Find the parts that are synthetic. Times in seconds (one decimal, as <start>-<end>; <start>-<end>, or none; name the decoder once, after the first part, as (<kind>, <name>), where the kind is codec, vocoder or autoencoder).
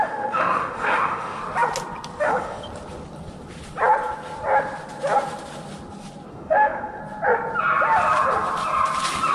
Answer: 0.0-1.4 (autoencoder, DAC-VAE); 2.2-2.6; 6.3-7.0